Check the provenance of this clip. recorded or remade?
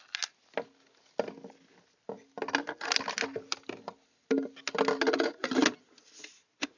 recorded